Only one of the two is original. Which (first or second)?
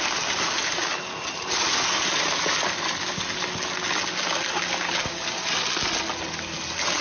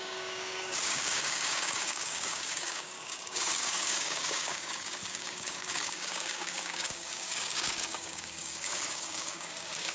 first